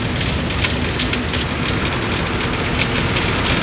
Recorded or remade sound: recorded